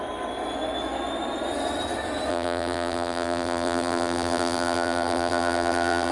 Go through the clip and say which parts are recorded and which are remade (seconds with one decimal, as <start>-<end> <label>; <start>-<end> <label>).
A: 0.0-2.3 recorded; 2.3-6.1 remade